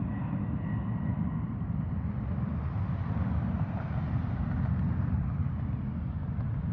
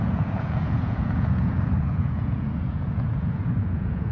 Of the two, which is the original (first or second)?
first